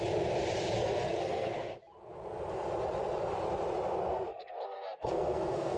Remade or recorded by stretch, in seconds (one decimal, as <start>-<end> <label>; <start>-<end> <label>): 0.0-0.8 recorded; 0.8-1.7 remade; 1.7-4.1 recorded; 4.1-5.8 remade